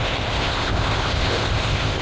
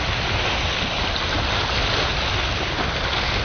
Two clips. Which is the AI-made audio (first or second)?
first